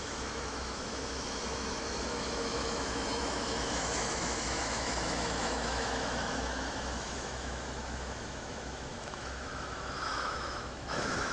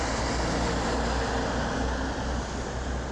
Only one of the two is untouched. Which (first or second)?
second